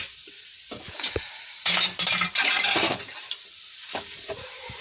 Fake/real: fake